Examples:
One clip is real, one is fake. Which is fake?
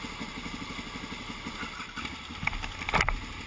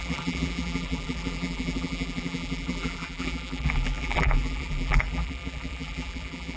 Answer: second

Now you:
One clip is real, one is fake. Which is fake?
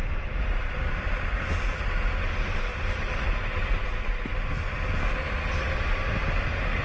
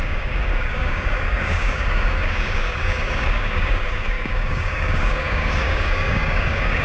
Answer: second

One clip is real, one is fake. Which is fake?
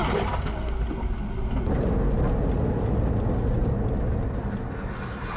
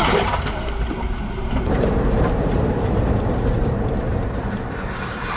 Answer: second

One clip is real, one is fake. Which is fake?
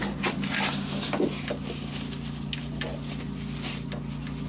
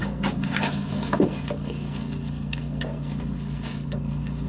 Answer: second